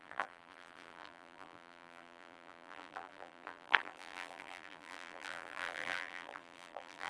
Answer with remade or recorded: remade